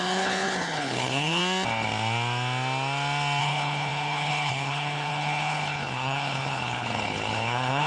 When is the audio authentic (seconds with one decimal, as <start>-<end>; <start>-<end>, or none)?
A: 1.4-3.4